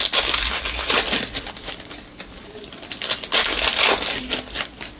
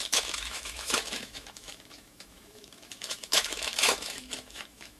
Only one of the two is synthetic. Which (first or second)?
second